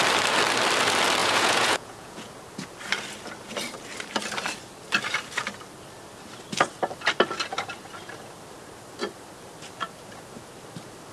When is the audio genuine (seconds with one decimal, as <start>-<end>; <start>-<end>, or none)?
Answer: 0.0-1.2; 2.3-11.1